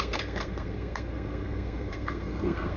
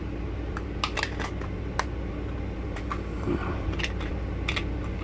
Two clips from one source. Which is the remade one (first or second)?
first